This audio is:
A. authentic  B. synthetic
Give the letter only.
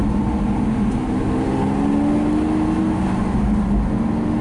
A